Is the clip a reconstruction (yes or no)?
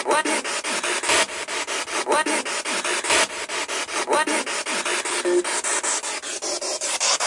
no